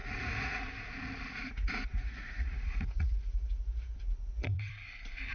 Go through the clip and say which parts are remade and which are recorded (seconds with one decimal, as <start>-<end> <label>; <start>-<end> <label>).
0.0-0.6 remade; 0.6-1.5 recorded; 1.5-4.7 remade; 4.7-5.3 recorded